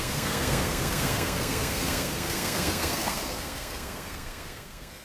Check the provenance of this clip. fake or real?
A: fake